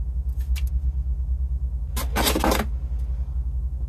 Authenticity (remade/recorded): recorded